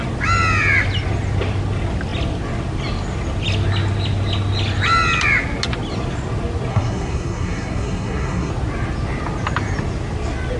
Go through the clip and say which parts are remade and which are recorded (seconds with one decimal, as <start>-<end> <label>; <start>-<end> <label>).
0.0-6.7 recorded; 6.7-8.5 remade; 8.5-10.6 recorded